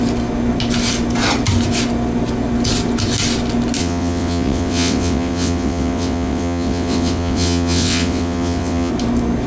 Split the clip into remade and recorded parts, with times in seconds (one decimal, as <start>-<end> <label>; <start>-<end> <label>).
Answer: 0.0-3.8 recorded; 3.8-8.9 remade; 8.9-9.5 recorded